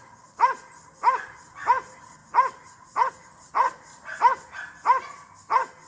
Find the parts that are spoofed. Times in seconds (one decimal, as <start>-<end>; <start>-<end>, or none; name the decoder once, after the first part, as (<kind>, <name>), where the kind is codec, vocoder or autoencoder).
none